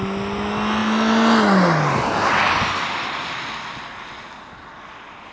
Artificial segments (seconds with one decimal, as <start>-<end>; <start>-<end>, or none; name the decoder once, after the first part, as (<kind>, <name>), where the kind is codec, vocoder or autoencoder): none